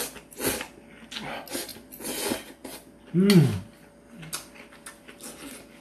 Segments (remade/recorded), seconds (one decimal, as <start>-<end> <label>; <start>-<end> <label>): 0.0-5.8 recorded